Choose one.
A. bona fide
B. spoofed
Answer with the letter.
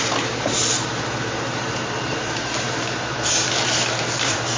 B